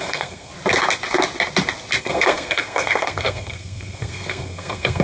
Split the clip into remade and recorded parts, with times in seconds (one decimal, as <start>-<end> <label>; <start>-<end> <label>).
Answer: 0.0-0.5 remade; 0.5-2.0 recorded; 2.0-5.0 remade